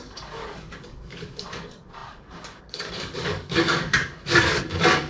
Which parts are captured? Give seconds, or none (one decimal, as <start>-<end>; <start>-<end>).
none